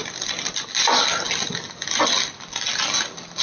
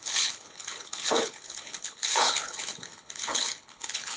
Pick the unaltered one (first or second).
first